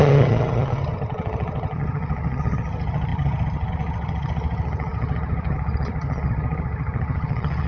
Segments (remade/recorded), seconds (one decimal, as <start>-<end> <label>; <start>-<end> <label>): 0.0-7.7 remade